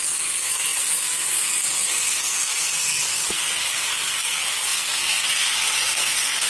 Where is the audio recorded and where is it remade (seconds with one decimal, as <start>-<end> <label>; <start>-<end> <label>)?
0.0-6.5 remade